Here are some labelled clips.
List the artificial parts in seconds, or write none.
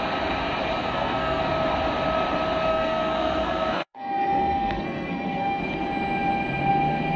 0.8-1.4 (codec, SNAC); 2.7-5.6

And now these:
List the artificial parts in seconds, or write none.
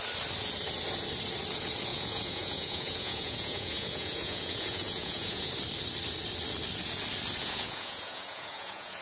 1.9-5.5 (vocoder, Vocos); 7.4-9.0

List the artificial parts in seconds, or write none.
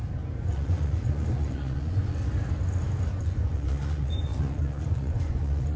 0.5-2.2 (vocoder, Vocos); 3.2-5.8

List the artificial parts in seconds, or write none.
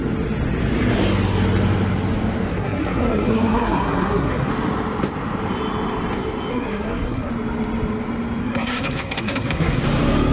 2.5-4.5 (codec, SNAC); 6.5-7.3; 8.4-9.8